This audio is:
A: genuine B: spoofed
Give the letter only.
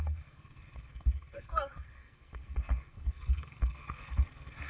B